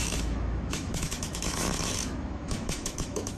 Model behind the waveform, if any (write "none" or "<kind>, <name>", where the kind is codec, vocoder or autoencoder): autoencoder, DAC-VAE